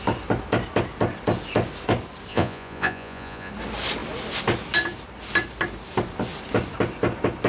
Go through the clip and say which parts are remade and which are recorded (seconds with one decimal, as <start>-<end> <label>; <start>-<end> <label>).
0.0-2.3 recorded; 2.3-3.5 remade; 3.5-7.5 recorded